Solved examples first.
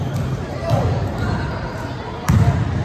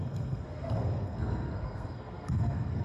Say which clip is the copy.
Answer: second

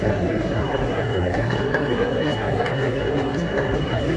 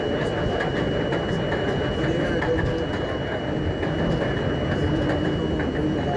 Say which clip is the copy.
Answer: first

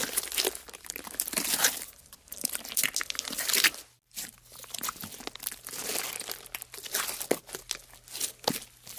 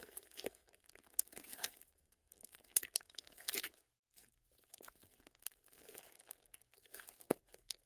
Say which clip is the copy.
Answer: second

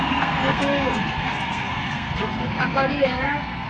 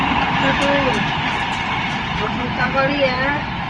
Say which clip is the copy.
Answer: first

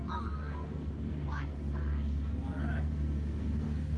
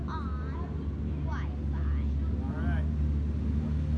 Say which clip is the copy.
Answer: first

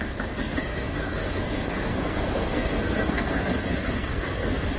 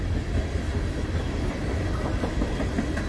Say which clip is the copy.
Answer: first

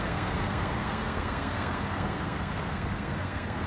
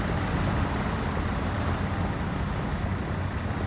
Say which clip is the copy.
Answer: first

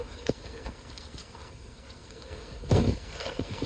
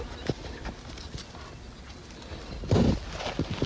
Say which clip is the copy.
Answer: first